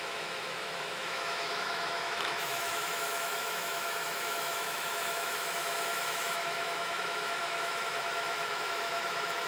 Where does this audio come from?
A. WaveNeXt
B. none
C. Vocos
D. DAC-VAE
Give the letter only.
D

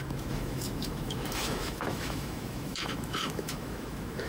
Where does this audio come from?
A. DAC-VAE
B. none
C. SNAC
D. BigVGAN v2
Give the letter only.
A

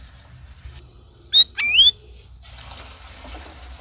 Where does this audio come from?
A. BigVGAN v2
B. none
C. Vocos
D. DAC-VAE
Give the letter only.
B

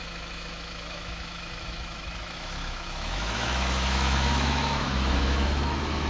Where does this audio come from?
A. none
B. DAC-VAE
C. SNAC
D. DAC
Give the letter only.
B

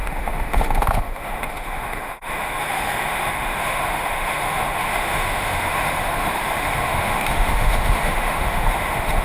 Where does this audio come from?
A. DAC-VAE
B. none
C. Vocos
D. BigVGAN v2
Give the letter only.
A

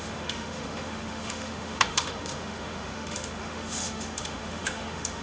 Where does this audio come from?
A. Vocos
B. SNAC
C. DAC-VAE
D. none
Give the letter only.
C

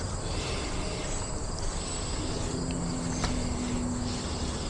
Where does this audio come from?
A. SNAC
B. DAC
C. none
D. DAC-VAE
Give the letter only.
C